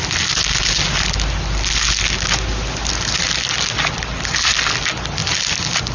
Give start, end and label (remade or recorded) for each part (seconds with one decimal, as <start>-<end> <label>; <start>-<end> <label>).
0.0-5.9 recorded